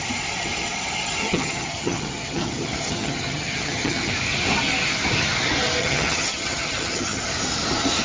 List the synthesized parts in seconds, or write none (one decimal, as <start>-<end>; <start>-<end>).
1.2-4.1; 5.8-7.2